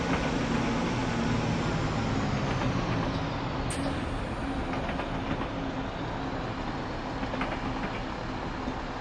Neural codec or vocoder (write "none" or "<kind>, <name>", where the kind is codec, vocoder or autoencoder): none